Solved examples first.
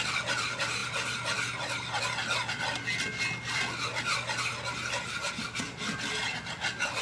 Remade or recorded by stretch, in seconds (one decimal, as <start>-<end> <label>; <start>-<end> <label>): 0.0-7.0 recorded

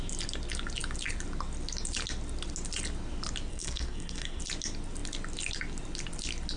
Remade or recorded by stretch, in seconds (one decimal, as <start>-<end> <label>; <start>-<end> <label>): 0.0-3.5 recorded; 3.5-4.4 remade; 4.4-6.6 recorded

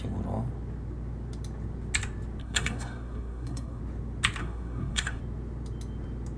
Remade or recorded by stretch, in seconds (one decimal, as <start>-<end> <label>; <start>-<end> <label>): 0.0-2.4 recorded; 2.4-3.8 remade; 3.8-4.4 recorded; 4.4-5.2 remade; 5.2-6.4 recorded

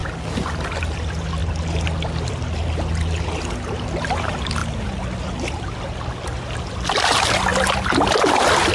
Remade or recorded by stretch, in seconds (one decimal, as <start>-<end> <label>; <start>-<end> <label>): 0.0-8.7 recorded